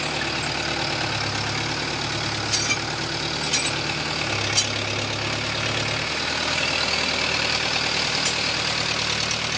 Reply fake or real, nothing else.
real